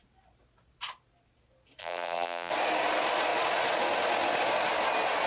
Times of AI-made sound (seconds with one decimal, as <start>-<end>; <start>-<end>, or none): 1.8-2.5